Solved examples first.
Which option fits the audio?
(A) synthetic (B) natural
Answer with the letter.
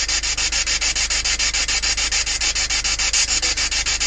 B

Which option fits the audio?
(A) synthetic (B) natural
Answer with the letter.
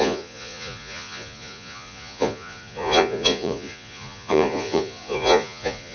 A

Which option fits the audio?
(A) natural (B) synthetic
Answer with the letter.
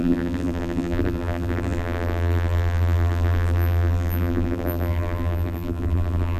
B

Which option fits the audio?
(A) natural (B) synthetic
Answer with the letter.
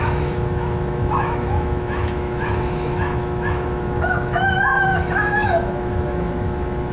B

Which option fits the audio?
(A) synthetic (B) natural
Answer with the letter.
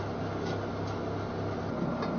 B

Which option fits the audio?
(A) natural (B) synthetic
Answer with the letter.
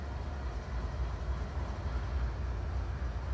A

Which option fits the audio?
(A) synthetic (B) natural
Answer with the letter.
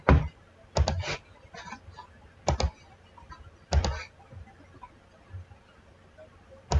B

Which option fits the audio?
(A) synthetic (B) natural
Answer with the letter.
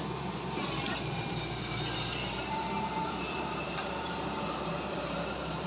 A